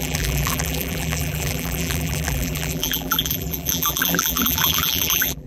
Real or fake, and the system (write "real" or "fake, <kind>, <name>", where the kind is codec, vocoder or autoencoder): fake, vocoder, BigVGAN v2